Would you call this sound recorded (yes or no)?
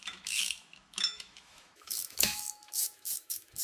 no